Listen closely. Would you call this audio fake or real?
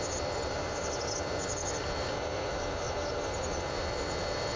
real